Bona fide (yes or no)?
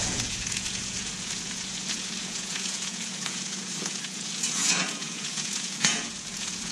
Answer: no